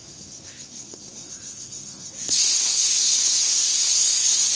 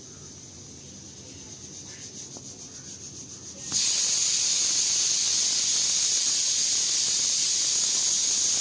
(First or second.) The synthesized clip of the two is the first